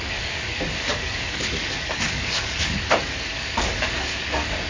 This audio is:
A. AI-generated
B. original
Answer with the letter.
A